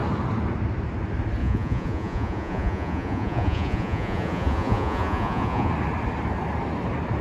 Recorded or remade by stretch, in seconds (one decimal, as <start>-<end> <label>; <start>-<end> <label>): 0.0-1.4 recorded; 1.4-5.7 remade; 5.7-7.2 recorded